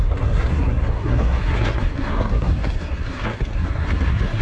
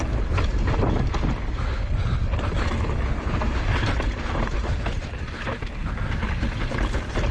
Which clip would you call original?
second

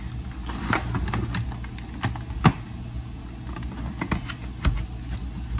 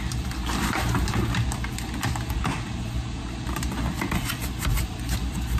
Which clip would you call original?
first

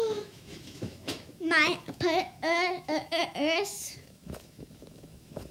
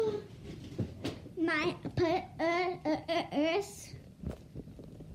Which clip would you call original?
second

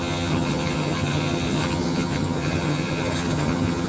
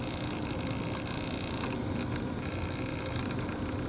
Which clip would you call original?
second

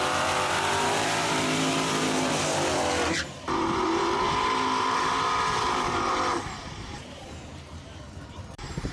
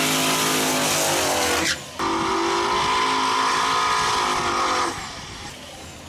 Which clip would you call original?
second